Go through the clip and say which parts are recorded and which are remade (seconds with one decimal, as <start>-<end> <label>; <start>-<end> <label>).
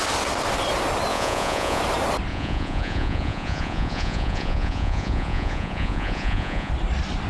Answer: 0.0-1.1 recorded; 1.1-1.8 remade; 1.8-2.3 recorded; 2.3-6.7 remade; 6.7-7.3 recorded